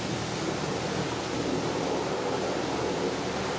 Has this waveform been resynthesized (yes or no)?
no